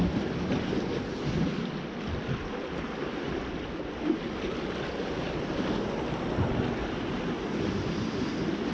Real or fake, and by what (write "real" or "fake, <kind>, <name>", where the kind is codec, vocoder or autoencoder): real